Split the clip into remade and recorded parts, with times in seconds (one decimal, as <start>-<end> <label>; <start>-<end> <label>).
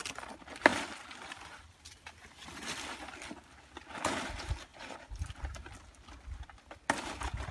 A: 0.0-7.5 recorded